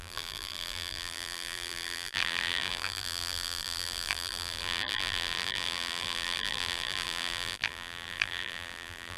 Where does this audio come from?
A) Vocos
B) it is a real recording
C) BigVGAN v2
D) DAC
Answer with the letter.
C